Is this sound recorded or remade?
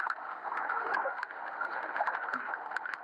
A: remade